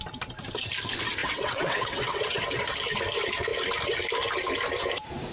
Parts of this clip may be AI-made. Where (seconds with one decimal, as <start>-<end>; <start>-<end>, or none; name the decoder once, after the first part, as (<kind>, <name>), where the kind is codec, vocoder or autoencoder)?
1.2-2.4 (vocoder, WaveNeXt)